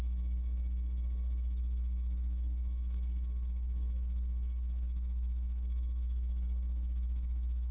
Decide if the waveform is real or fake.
fake